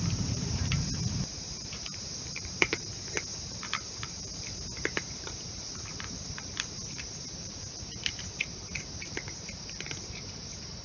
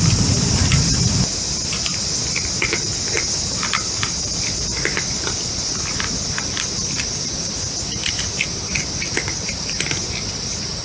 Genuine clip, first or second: second